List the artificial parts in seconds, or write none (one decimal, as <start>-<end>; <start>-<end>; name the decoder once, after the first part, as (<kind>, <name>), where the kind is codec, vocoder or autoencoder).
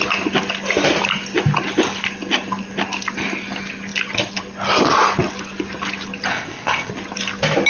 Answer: 6.3-6.9 (codec, ZipCodec)